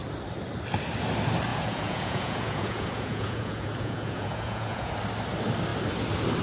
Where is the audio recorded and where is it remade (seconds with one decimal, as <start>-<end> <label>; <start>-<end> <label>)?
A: 0.0-1.5 recorded; 1.5-4.9 remade; 4.9-6.4 recorded